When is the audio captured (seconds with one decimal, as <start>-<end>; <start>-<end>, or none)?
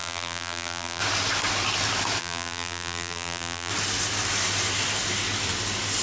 1.0-2.2; 3.7-6.0